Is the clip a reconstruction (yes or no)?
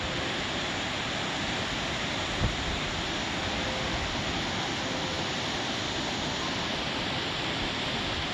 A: no